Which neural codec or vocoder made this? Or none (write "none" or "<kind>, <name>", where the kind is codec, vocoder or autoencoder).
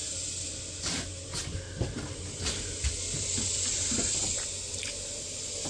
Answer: none